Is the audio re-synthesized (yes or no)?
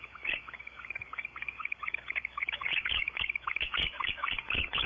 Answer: yes